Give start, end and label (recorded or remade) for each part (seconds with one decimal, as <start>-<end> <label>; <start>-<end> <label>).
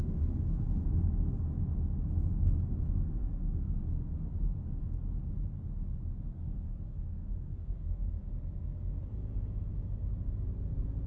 0.0-0.6 remade; 0.6-3.2 recorded; 3.2-3.8 remade; 3.8-6.3 recorded; 6.3-8.3 remade; 8.3-11.1 recorded